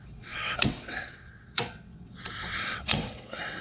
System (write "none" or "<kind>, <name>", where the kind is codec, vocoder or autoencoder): vocoder, WaveNeXt